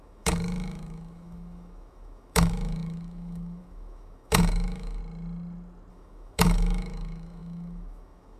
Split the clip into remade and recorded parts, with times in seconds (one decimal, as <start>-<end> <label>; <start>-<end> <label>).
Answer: 0.0-5.0 remade; 5.0-5.9 recorded; 5.9-8.4 remade